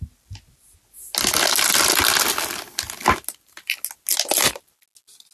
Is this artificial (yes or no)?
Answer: no